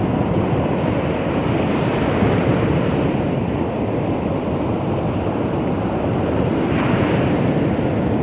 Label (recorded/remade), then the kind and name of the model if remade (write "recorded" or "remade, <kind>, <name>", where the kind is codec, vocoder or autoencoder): recorded